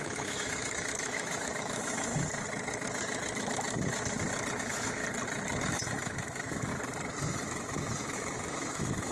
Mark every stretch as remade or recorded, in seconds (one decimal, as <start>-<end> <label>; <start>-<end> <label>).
0.0-2.1 remade; 2.1-4.6 recorded; 4.6-5.0 remade; 5.0-5.7 recorded; 5.7-6.7 remade; 6.7-7.3 recorded; 7.3-9.1 remade